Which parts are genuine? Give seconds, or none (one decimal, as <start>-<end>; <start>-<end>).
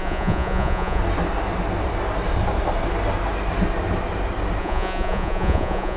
1.0-4.6